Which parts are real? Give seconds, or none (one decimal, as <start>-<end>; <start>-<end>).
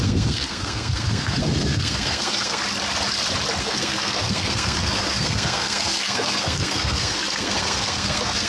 2.6-3.6